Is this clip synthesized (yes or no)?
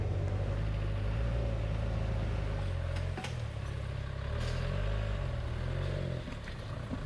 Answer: no